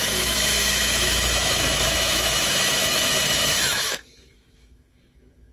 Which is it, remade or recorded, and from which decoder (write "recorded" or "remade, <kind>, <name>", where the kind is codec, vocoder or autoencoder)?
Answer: remade, autoencoder, DAC-VAE